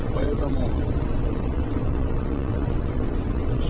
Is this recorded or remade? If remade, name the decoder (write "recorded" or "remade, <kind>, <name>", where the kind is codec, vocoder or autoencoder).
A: remade, vocoder, WaveNeXt